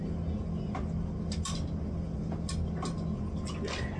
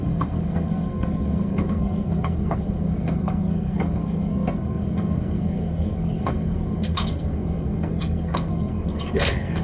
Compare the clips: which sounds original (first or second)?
first